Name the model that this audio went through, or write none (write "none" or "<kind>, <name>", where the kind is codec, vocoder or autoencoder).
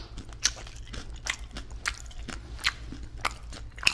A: none